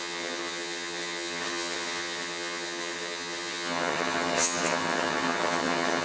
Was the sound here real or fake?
fake